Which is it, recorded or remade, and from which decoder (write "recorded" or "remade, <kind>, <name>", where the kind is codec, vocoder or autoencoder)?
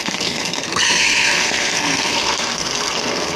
remade, codec, SNAC